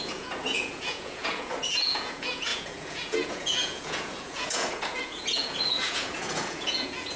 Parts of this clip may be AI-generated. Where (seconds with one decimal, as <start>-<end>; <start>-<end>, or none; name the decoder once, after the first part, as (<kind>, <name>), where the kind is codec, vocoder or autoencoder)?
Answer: 0.0-7.2 (vocoder, Vocos)